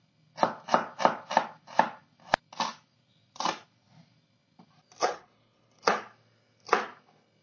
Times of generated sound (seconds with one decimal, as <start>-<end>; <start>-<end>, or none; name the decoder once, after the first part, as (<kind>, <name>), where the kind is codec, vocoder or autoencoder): 5.0-6.0 (codec, HILCodec)